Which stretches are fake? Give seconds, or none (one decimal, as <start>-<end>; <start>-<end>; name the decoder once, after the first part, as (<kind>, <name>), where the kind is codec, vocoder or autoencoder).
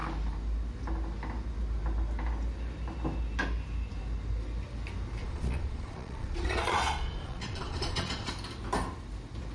5.2-8.3 (vocoder, Vocos)